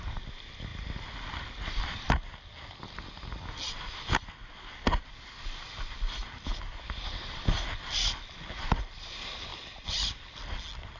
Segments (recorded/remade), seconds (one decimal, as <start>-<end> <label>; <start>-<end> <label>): 0.0-11.0 recorded